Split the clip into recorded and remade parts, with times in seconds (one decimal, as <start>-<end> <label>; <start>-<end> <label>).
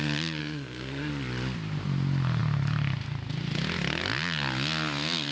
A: 0.0-0.4 recorded; 0.4-1.1 remade; 1.1-5.3 recorded